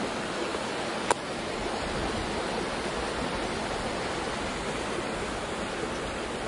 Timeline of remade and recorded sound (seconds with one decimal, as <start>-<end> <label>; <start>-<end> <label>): 0.0-6.5 recorded